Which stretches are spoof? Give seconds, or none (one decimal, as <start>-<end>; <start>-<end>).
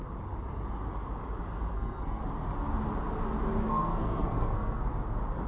1.7-2.2; 3.6-4.8